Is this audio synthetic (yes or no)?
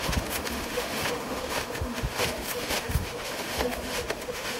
yes